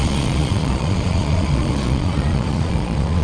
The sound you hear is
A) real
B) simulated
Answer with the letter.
B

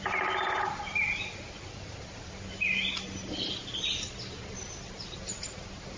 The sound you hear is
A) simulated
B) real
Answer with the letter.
B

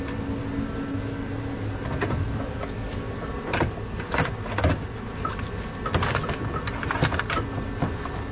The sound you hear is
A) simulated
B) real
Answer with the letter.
B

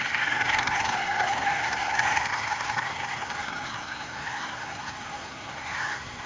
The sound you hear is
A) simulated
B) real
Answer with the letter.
A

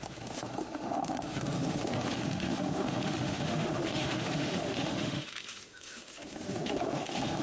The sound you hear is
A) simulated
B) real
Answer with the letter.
A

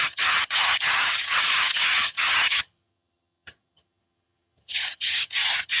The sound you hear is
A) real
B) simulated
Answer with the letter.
B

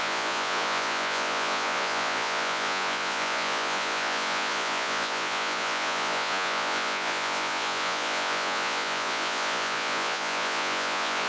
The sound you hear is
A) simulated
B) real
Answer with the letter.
A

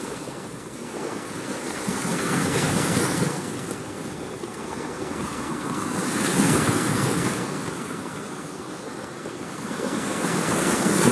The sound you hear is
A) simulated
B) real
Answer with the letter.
A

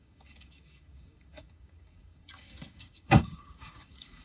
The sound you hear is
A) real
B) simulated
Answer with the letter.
B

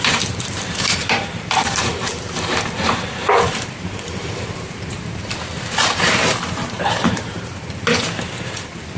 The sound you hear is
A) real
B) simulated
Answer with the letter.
B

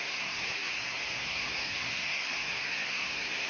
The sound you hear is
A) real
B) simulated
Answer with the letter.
B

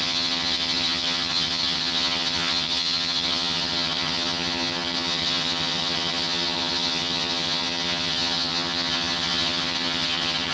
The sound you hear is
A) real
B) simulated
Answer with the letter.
B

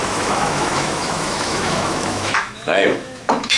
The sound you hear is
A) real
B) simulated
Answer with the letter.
B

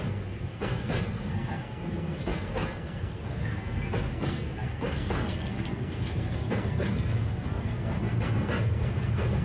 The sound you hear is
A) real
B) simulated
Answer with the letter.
B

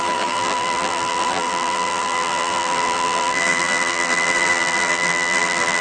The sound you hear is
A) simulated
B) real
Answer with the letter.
A